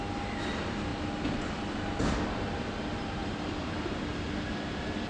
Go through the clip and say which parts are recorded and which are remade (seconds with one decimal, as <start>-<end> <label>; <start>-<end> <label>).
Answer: 0.0-0.9 recorded; 0.9-1.5 remade; 1.5-3.2 recorded; 3.2-4.0 remade; 4.0-5.1 recorded